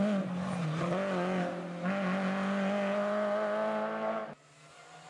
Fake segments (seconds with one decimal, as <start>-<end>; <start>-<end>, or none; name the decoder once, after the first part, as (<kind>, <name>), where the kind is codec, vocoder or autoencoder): none